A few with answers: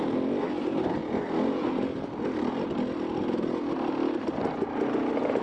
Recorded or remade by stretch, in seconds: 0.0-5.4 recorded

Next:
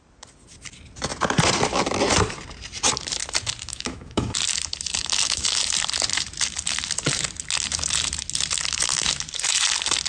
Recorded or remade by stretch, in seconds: 0.0-3.7 recorded; 3.7-4.3 remade; 4.3-5.0 recorded; 5.0-5.6 remade; 5.6-10.1 recorded

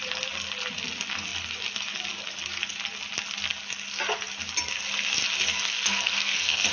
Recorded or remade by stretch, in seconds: 0.0-5.5 recorded; 5.5-6.7 remade

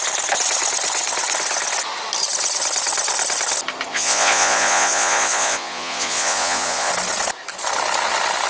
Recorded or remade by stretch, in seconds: 0.0-3.9 recorded; 3.9-6.9 remade; 6.9-8.5 recorded

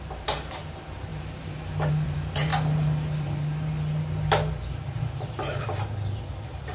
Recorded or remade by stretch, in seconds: 0.0-1.1 remade; 1.1-1.9 recorded; 1.9-2.5 remade; 2.5-4.7 recorded; 4.7-6.7 remade